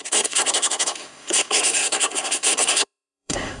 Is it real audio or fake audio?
fake